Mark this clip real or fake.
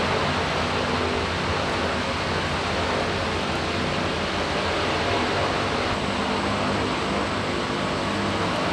real